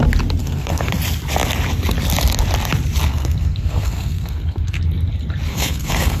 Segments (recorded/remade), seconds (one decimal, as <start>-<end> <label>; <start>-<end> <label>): 0.0-0.4 recorded; 0.4-0.9 remade; 0.9-3.1 recorded; 3.1-4.8 remade; 4.8-5.5 recorded; 5.5-6.2 remade